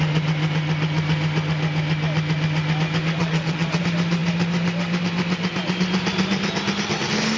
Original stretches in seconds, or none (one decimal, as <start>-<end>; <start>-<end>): 0.0-3.2; 3.8-7.4